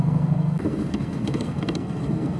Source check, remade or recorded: remade